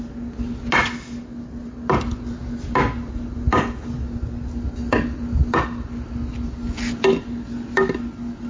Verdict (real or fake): real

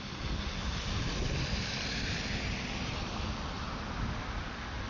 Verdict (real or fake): real